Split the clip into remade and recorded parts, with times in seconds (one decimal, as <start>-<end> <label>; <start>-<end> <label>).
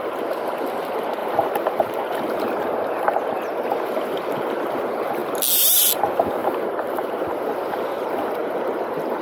0.0-1.2 recorded; 1.2-2.2 remade; 2.2-6.4 recorded; 6.4-7.1 remade; 7.1-9.2 recorded